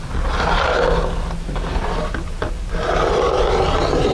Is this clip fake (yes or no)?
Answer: no